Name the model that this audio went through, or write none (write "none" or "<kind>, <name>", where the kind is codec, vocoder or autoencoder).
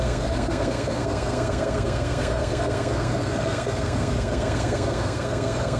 codec, SNAC